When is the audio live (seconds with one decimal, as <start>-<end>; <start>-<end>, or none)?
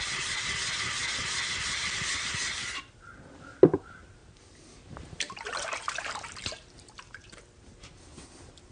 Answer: 0.0-4.2; 7.4-8.7